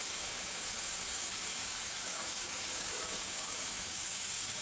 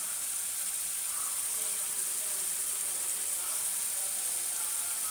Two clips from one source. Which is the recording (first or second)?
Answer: second